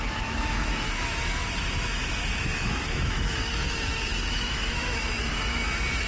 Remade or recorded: remade